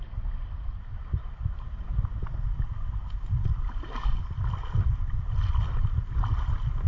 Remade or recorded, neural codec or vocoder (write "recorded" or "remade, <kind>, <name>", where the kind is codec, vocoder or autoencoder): recorded